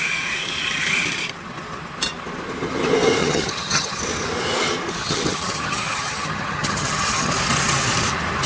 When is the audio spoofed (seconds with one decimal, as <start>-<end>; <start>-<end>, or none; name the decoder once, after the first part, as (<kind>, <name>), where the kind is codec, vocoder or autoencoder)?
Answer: 3.2-4.0 (vocoder, HiFi-GAN); 5.0-7.3